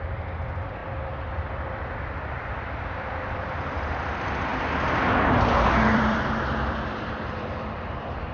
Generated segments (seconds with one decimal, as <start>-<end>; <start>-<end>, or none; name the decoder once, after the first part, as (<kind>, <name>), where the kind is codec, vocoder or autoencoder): 0.0-0.8 (vocoder, BigVGAN v2); 1.3-4.5; 5.5-8.3